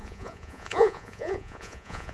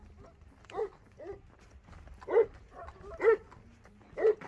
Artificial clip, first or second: first